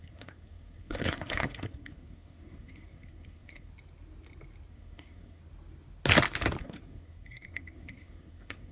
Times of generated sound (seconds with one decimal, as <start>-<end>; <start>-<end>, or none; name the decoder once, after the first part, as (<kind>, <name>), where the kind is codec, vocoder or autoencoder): 0.0-3.7 (codec, SNAC); 4.7-5.4; 6.6-8.7